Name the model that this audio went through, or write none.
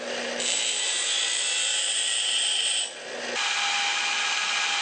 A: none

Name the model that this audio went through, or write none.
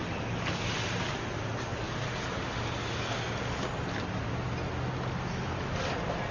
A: none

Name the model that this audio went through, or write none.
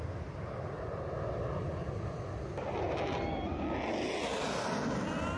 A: none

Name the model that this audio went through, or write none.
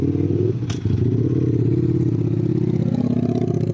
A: none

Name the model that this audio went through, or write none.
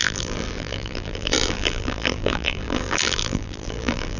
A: vocoder, BigVGAN v2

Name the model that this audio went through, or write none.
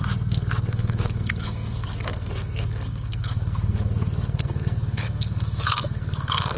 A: codec, SNAC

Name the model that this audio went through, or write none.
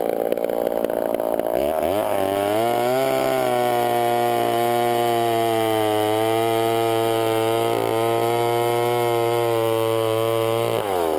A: none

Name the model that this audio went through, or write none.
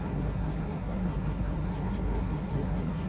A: codec, SNAC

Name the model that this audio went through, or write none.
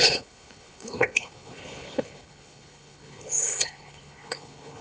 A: codec, HILCodec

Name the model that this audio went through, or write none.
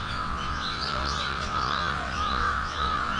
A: vocoder, WaveNeXt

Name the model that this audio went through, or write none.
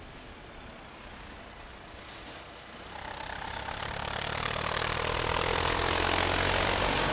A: none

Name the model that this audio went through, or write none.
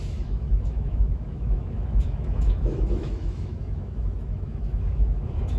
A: autoencoder, DAC-VAE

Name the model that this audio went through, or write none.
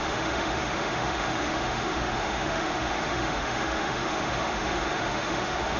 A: autoencoder, DAC-VAE